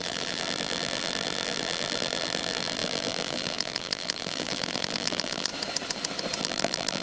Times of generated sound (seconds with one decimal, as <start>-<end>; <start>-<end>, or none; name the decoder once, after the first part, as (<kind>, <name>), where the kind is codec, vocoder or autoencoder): 0.0-5.5 (vocoder, BigVGAN v2); 6.4-7.0